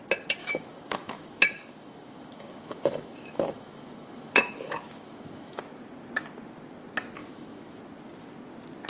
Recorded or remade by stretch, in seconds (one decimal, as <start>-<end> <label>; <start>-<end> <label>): 0.0-0.4 recorded; 0.4-5.6 remade; 5.6-7.2 recorded; 7.2-7.8 remade; 7.8-8.9 recorded